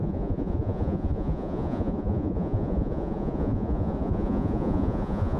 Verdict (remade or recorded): remade